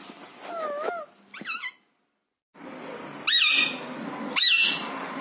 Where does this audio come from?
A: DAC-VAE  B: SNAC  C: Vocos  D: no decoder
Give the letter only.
D